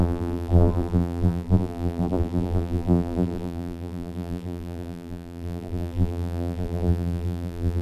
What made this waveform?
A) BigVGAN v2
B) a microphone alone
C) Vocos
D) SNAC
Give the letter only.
A